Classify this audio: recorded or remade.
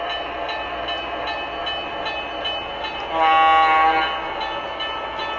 recorded